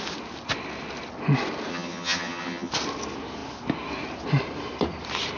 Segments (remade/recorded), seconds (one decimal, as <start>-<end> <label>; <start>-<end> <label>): 0.0-1.7 recorded; 1.7-2.7 remade; 2.7-5.4 recorded